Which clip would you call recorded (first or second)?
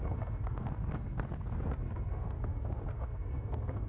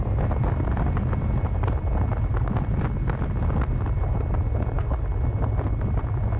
second